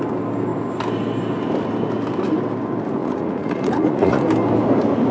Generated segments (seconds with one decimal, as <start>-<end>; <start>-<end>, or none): 3.0-4.2